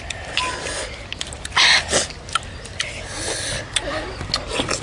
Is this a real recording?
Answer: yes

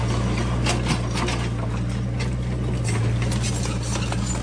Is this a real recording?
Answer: yes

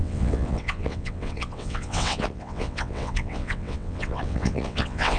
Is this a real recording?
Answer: no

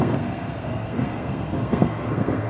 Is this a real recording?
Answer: no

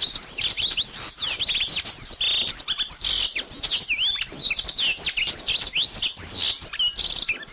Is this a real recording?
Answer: yes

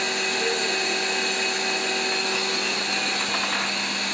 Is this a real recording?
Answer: yes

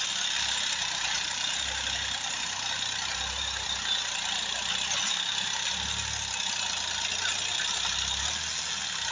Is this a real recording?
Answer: yes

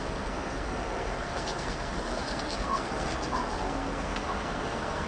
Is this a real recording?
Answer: no